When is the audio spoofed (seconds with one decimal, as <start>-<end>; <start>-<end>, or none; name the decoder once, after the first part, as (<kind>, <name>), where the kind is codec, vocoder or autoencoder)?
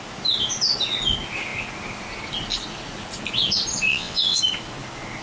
3.9-4.4 (vocoder, WaveNeXt)